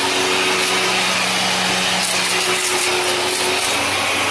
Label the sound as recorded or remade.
recorded